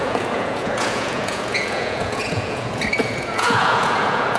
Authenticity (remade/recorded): remade